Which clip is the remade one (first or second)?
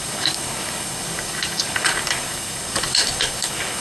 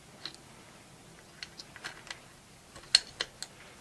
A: first